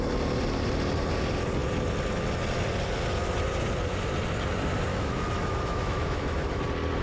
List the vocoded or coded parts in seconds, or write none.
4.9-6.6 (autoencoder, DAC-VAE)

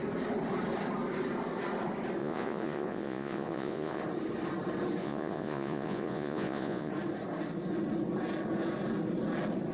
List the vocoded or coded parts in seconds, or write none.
2.2-4.0 (vocoder, Vocos); 5.0-6.9

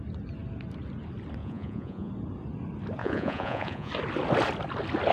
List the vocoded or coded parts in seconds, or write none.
1.4-2.1 (vocoder, Vocos); 3.0-3.9

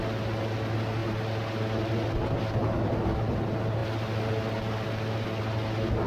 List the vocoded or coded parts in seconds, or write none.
none

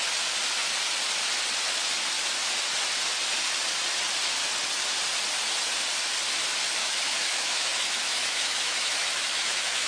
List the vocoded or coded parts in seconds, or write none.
6.8-9.9 (autoencoder, DAC-VAE)